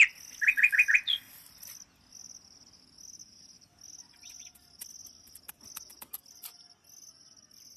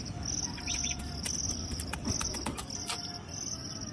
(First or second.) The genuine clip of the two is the first